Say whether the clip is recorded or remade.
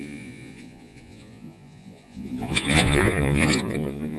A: remade